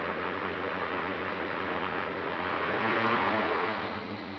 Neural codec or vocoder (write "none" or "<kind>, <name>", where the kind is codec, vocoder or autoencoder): vocoder, Vocos